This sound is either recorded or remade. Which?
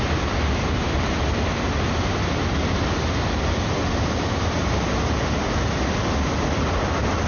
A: recorded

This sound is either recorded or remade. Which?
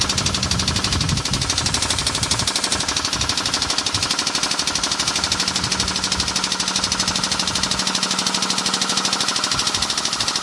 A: recorded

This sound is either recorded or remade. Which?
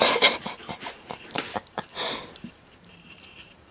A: remade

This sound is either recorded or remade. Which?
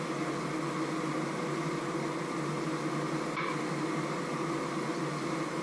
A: recorded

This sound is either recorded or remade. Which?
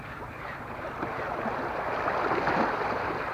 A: recorded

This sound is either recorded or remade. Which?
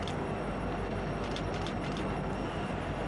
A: recorded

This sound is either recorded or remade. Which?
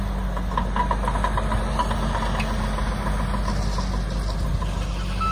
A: recorded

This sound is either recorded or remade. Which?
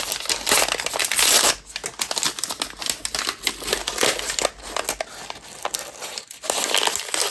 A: recorded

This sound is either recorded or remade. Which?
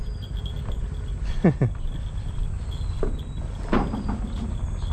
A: recorded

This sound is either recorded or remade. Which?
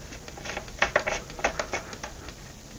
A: recorded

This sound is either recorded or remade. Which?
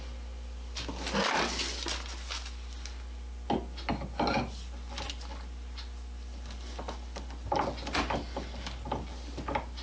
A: recorded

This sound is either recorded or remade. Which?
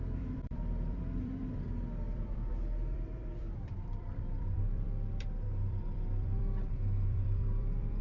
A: remade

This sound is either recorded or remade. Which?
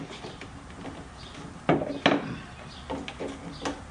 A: recorded